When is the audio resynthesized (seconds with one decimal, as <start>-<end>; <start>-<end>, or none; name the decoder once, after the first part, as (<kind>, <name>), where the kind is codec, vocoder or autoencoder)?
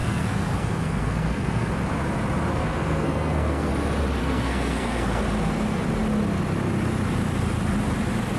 0.0-1.7 (codec, SNAC); 2.5-3.7; 4.2-5.2